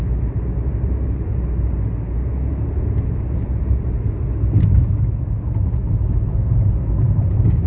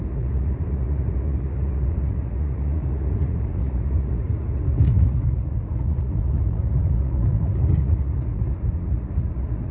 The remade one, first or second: second